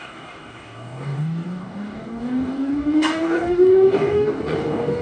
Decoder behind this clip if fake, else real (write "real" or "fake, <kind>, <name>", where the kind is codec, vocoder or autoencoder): fake, codec, DAC